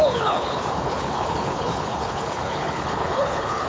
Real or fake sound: fake